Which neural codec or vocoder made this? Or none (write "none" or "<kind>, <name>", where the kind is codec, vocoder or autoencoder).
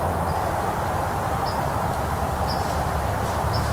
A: none